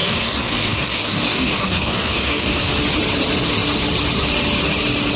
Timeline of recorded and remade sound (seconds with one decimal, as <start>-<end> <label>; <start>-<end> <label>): 0.0-2.7 remade; 2.7-5.2 recorded